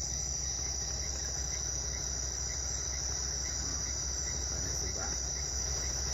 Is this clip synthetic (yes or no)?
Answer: no